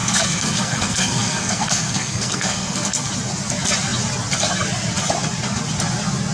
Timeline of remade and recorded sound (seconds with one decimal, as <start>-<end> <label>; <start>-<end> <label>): 0.0-3.1 remade; 3.1-6.3 recorded